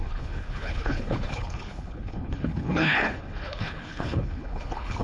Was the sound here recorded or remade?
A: remade